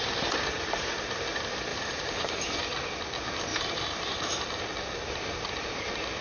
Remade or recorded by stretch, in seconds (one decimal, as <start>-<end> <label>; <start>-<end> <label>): 0.0-1.7 recorded; 1.7-2.6 remade; 2.6-3.5 recorded; 3.5-4.6 remade; 4.6-6.2 recorded